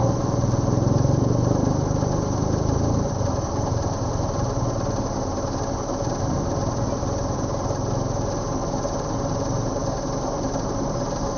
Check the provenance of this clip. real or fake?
real